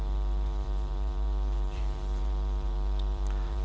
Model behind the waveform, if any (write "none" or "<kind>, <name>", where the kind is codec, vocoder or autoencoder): vocoder, BigVGAN v2